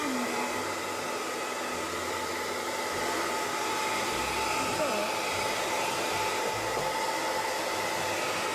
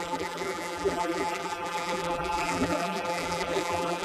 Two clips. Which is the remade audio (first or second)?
second